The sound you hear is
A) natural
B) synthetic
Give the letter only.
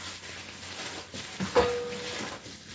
A